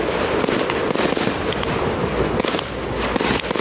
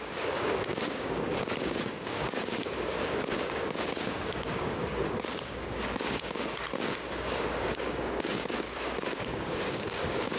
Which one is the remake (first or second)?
second